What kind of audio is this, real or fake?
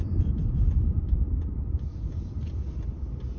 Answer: real